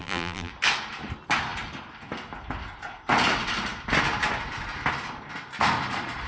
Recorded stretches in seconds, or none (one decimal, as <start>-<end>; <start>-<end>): 0.5-6.3